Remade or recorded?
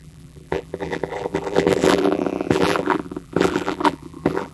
remade